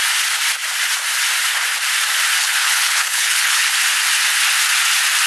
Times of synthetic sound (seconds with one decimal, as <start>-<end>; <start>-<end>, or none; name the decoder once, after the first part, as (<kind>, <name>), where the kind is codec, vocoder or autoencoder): 2.4-3.7 (codec, HILCodec)